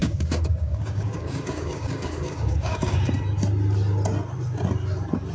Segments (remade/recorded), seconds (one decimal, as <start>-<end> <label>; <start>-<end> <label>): 0.0-3.1 remade; 3.1-5.3 recorded